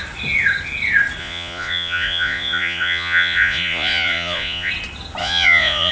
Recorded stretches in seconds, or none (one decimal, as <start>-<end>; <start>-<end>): 0.0-1.2; 4.7-5.2